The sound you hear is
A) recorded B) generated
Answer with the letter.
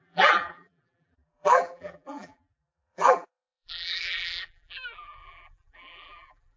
B